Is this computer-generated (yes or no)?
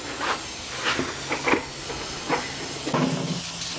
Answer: no